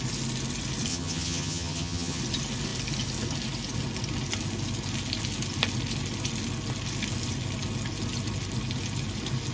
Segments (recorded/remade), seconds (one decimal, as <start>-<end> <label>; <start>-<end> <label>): 0.0-0.9 recorded; 0.9-2.2 remade; 2.2-9.5 recorded